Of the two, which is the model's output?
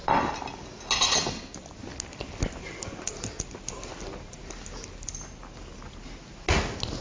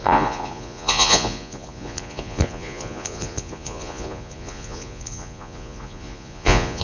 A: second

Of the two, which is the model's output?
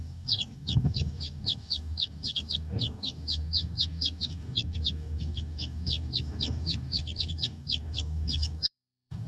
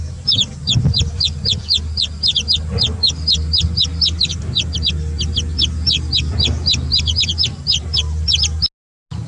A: first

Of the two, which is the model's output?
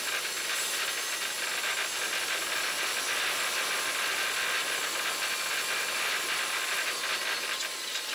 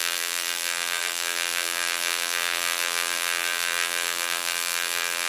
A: second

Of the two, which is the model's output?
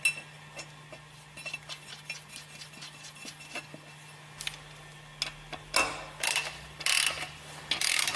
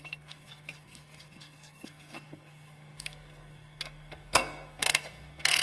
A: second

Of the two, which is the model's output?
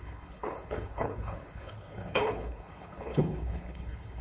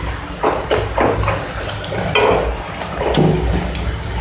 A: first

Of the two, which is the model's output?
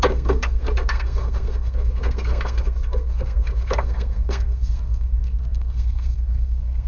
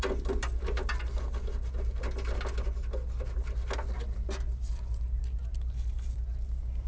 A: first